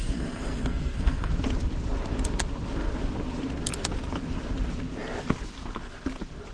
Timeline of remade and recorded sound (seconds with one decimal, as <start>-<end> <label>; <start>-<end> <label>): 0.0-1.3 remade; 1.3-6.5 recorded